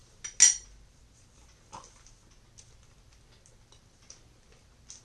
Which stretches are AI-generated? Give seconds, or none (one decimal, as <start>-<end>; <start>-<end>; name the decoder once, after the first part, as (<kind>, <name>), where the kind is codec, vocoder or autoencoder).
none